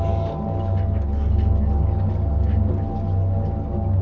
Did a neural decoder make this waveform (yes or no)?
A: no